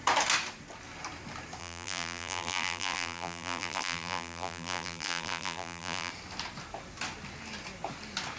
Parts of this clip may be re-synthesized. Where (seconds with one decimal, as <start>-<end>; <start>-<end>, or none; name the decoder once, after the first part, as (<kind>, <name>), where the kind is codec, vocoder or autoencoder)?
1.6-6.1 (vocoder, BigVGAN v2)

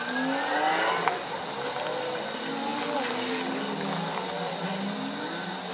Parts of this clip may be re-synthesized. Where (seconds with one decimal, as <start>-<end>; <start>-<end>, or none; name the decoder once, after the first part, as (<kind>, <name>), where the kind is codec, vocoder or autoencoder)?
none

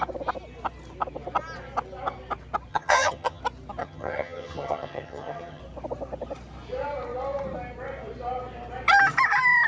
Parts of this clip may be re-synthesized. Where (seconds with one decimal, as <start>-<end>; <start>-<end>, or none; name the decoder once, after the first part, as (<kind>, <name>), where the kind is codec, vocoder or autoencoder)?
2.7-3.4 (vocoder, HiFi-GAN); 3.8-5.6